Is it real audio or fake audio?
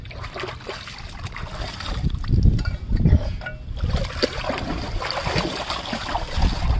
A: real